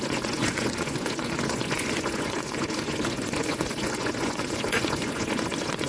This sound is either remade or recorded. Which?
remade